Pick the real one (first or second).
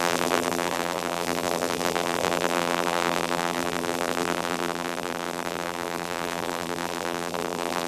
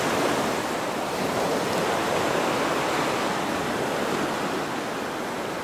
second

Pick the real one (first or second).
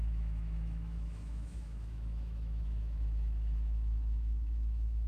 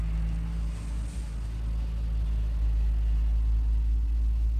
second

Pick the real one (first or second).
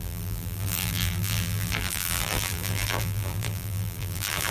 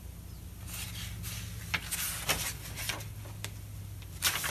second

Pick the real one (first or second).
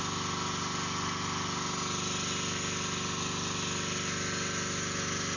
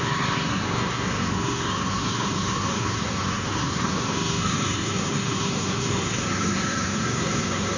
first